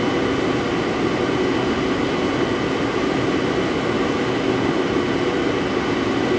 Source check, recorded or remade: recorded